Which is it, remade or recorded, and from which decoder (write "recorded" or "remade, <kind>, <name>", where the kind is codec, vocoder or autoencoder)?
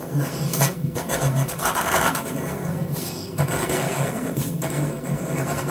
remade, codec, SNAC